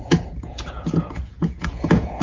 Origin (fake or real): fake